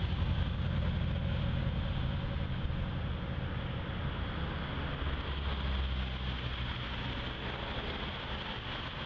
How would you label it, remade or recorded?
recorded